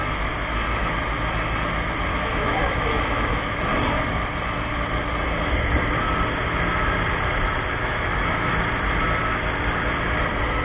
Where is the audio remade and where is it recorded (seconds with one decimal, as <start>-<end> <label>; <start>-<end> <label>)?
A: 0.0-2.1 recorded; 2.1-3.6 remade; 3.6-7.8 recorded; 7.8-8.5 remade; 8.5-10.6 recorded